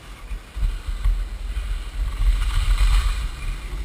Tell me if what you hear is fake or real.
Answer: real